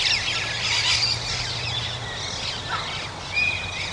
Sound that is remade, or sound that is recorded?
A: recorded